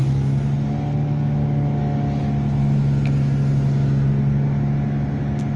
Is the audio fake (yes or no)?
no